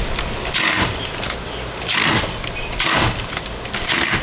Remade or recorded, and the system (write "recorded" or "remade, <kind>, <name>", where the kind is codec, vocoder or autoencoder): recorded